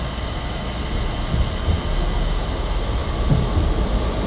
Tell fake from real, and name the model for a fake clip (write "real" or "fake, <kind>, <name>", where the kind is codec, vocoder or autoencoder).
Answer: real